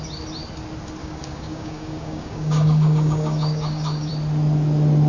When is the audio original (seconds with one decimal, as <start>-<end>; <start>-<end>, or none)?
0.0-1.0; 4.1-5.1